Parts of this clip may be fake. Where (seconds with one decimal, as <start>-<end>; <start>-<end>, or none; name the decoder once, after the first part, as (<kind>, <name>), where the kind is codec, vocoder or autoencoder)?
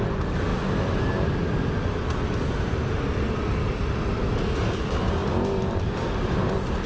5.2-6.9 (vocoder, BigVGAN v2)